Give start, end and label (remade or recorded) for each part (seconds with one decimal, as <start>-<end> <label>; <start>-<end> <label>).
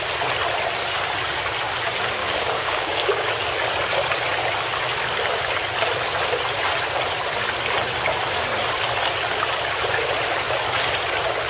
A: 0.0-2.2 recorded; 2.2-3.3 remade; 3.3-11.5 recorded